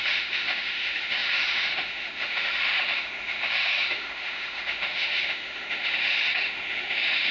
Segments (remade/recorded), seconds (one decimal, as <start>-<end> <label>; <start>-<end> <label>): 0.0-7.3 remade